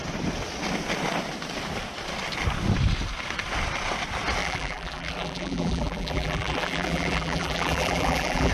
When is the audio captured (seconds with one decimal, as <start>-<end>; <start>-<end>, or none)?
0.0-4.4